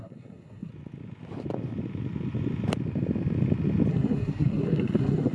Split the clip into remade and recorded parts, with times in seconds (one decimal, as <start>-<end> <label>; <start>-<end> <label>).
0.0-0.7 remade; 0.7-3.9 recorded; 3.9-5.3 remade